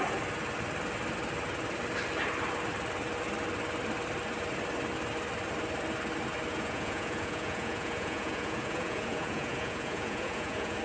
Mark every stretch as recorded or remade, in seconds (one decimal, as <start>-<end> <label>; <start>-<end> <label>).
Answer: 0.0-6.5 recorded; 6.5-10.8 remade